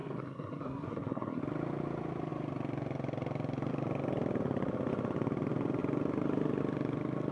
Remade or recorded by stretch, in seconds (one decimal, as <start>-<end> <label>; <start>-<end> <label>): 0.0-1.4 remade; 1.4-7.3 recorded